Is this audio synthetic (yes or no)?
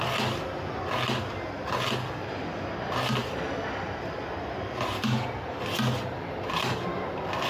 no